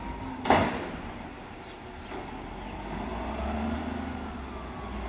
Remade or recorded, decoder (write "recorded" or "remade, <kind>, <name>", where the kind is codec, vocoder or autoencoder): recorded